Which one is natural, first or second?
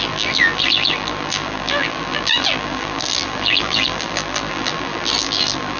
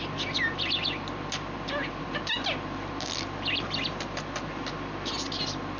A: second